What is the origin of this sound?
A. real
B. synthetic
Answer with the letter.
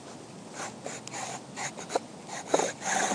A